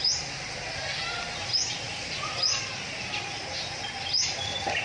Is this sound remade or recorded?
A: recorded